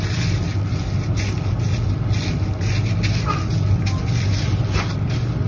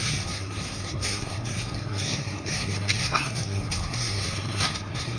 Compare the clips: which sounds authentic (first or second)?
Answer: first